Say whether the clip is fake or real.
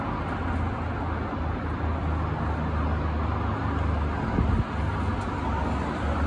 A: real